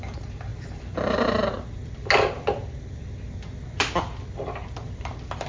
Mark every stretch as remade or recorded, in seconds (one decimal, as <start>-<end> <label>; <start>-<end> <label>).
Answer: 0.0-5.5 recorded